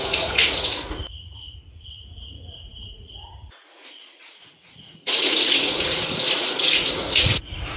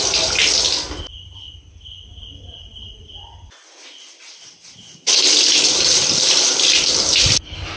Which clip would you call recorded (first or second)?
second